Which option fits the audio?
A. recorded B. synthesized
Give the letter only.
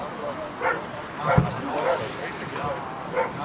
A